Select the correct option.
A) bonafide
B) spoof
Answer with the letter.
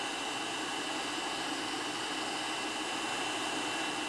A